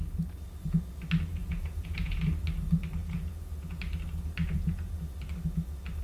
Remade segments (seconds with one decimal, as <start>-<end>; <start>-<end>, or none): 1.4-2.2; 3.0-3.8; 4.4-5.0